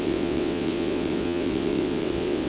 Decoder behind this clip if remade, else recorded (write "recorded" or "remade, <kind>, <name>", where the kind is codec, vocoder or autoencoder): remade, vocoder, WaveNeXt